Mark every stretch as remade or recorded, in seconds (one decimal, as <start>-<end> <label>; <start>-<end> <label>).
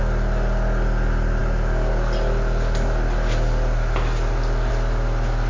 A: 0.0-5.5 recorded